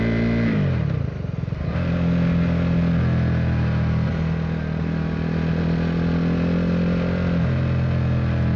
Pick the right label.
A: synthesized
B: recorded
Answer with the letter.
B